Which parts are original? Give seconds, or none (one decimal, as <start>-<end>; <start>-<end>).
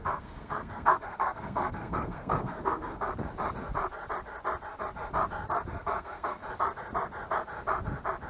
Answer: 3.1-5.7; 6.4-8.3